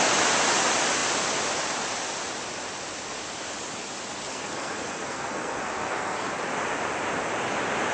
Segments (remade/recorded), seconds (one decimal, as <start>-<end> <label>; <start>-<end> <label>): 0.0-4.3 recorded; 4.3-6.3 remade; 6.3-7.9 recorded

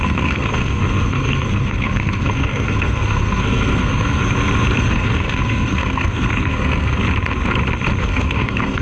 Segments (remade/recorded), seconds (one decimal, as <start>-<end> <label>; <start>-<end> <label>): 0.0-4.2 remade; 4.2-4.8 recorded; 4.8-7.0 remade; 7.0-8.0 recorded; 8.0-8.8 remade

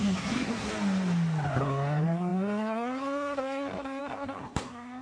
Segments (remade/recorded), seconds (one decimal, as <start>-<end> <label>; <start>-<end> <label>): 0.0-0.7 remade; 0.7-1.6 recorded; 1.6-5.0 remade

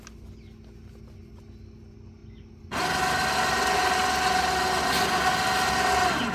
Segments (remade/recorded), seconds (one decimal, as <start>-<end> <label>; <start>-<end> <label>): 0.0-6.3 recorded

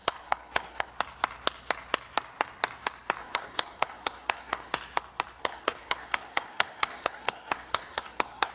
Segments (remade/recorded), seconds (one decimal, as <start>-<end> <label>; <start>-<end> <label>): 0.0-0.9 remade; 0.9-3.2 recorded; 3.2-4.7 remade; 4.7-5.4 recorded; 5.4-8.5 remade

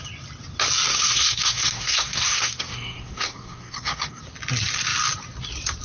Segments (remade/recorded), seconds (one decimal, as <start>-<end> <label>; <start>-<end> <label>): 0.0-0.9 recorded; 0.9-4.2 remade; 4.2-5.8 recorded

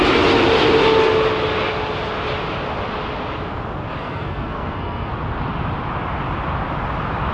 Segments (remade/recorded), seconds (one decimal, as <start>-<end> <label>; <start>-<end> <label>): 0.0-4.0 recorded; 4.0-5.1 remade; 5.1-7.3 recorded